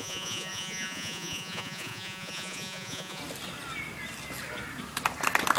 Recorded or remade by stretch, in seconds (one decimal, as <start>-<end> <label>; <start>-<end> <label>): 0.0-3.2 remade; 3.2-5.6 recorded